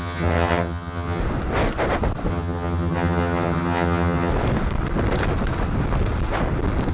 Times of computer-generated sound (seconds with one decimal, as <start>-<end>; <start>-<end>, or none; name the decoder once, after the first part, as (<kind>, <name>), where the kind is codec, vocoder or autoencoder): 0.0-1.2 (vocoder, HiFi-GAN); 2.3-4.3